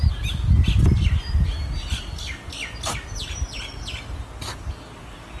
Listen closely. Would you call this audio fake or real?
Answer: real